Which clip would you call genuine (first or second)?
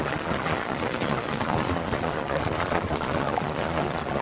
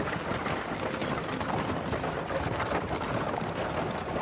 second